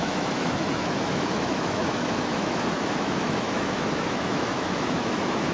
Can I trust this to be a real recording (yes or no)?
no